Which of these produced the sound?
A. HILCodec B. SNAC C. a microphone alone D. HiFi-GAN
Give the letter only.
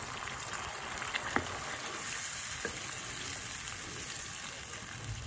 C